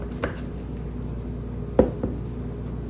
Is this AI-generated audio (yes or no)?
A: no